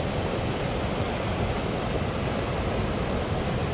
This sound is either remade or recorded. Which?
recorded